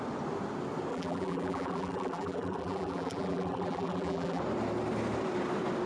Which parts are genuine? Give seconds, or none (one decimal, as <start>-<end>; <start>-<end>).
0.0-0.9; 4.4-5.9